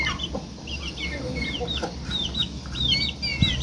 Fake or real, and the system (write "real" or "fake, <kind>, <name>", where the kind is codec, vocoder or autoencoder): real